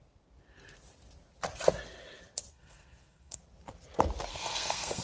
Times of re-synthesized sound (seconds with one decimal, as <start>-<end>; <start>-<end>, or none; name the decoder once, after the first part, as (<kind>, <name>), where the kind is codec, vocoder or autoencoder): 2.5-3.4 (codec, SNAC); 4.3-5.0